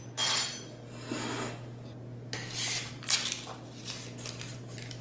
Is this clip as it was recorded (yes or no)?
yes